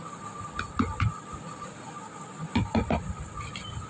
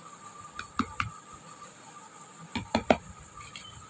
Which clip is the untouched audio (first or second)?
first